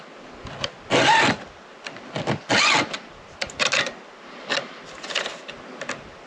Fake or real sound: real